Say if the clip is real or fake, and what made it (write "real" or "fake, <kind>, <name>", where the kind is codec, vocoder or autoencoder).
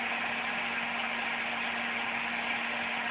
real